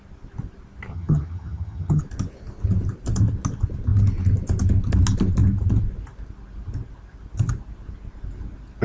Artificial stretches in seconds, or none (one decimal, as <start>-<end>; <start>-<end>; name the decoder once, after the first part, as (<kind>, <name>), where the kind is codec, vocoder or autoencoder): 0.9-2.0 (vocoder, HiFi-GAN)